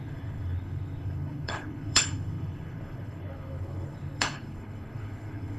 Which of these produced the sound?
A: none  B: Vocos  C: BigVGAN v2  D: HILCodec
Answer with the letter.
D